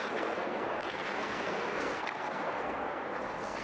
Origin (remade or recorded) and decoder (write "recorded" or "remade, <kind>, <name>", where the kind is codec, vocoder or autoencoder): remade, codec, SNAC